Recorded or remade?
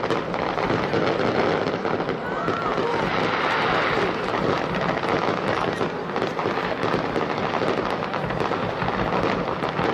recorded